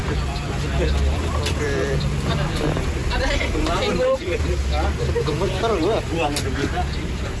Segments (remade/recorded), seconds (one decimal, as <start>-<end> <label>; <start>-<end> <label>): 0.0-3.8 remade; 3.8-7.4 recorded